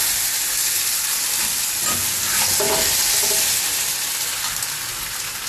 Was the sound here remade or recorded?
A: recorded